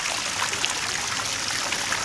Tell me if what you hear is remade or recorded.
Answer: recorded